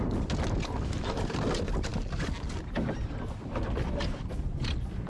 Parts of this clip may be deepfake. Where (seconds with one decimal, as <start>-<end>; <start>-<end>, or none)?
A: none